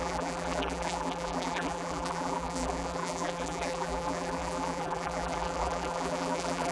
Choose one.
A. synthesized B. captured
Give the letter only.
A